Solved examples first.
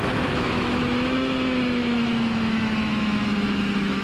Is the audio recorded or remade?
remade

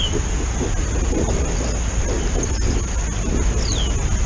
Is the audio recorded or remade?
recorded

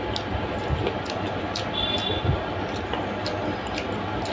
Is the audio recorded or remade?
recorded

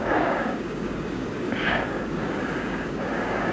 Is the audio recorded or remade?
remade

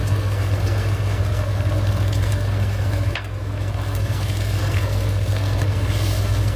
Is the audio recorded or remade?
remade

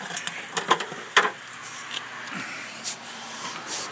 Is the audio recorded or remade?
recorded